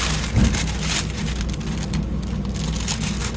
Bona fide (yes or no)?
yes